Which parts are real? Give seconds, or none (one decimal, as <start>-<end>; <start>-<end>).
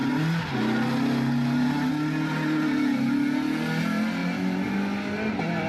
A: 0.0-4.2; 4.8-5.7